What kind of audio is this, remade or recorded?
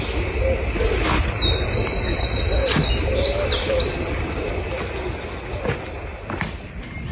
recorded